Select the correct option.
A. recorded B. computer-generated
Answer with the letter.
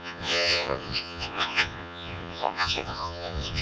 B